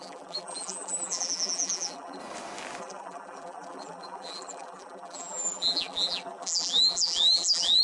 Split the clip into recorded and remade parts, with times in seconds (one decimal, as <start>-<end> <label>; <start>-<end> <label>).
0.0-2.2 remade; 2.2-2.8 recorded; 2.8-7.8 remade